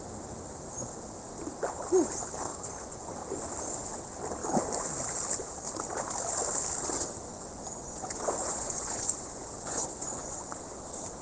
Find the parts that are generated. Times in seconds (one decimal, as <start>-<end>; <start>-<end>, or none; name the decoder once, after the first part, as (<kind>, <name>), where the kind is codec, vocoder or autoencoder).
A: 2.5-3.1 (vocoder, Vocos); 7.3-10.5